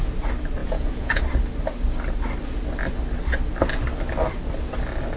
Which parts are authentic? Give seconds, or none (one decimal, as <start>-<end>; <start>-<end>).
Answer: 0.0-0.6; 1.2-5.2